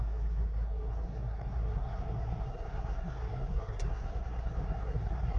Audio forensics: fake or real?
fake